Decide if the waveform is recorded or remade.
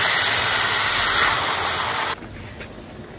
recorded